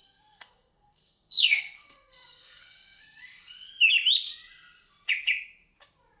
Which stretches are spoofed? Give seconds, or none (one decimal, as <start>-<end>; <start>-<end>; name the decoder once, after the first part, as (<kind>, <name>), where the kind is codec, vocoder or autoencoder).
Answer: 0.0-3.7 (codec, SNAC)